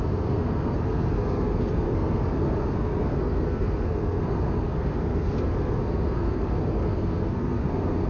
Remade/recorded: remade